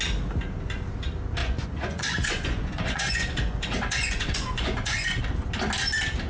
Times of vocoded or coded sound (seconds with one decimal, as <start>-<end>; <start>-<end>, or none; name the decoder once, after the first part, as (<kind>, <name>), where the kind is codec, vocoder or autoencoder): 1.4-5.2 (vocoder, Vocos)